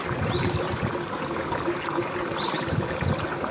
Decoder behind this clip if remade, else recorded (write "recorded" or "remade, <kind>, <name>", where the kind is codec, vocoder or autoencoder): recorded